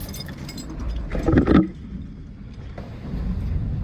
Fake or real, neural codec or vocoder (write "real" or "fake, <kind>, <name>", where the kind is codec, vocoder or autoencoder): real